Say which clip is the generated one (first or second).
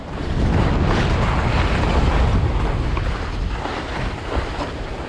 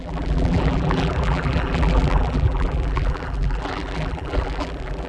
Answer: second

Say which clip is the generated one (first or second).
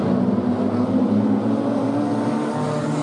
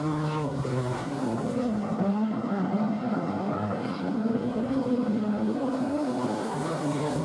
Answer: second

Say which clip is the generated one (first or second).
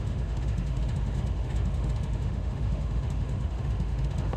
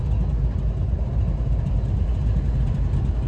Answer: first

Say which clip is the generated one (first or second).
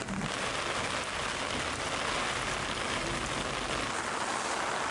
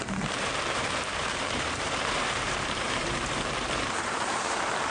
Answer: second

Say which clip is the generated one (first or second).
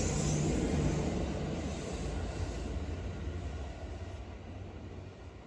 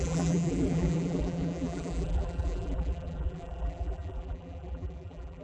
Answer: second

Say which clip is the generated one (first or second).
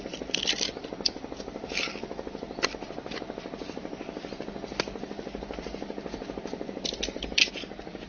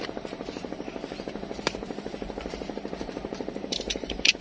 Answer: second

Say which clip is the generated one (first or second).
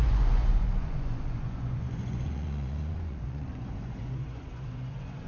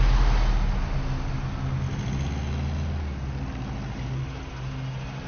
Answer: first